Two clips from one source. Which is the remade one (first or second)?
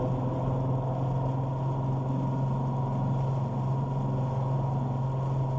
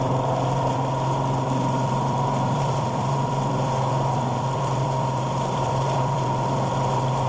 second